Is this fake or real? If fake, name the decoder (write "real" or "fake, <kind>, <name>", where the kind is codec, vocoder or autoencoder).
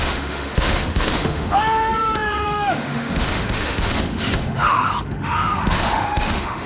fake, autoencoder, DAC-VAE